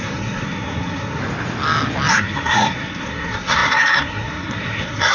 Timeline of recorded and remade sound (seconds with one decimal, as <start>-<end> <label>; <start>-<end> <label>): 0.0-1.2 remade; 1.2-2.1 recorded; 2.1-5.1 remade

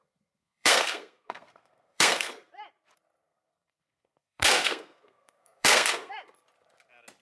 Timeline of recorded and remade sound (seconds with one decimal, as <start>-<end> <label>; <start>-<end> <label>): 0.0-2.5 remade; 2.5-3.3 recorded; 3.3-6.1 remade; 6.1-7.2 recorded

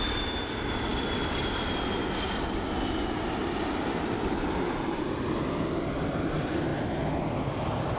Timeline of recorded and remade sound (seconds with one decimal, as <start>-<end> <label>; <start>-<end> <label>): 0.0-8.0 recorded